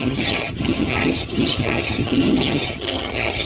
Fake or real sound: fake